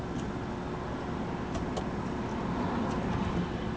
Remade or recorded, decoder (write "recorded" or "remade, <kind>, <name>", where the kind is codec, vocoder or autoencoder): recorded